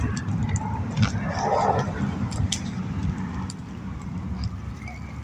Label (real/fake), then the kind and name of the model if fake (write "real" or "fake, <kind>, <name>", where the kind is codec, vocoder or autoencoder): real